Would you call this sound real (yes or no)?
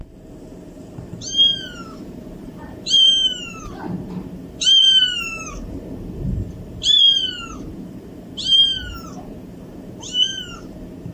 no